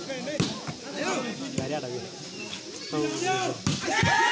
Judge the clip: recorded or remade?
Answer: recorded